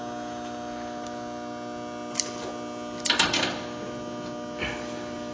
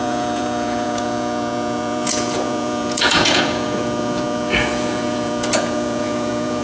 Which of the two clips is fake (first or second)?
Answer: second